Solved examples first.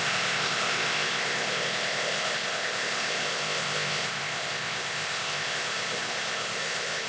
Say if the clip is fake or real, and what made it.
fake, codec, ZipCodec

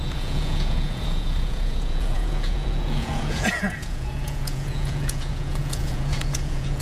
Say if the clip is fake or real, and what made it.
fake, vocoder, Vocos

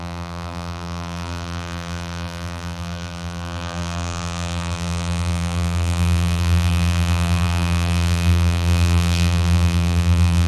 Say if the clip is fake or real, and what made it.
fake, vocoder, BigVGAN v2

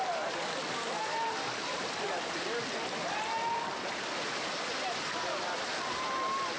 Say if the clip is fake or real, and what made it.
real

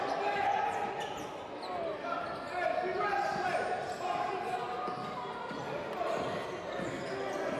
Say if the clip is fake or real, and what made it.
real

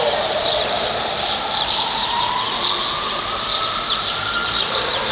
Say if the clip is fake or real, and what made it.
fake, vocoder, BigVGAN v2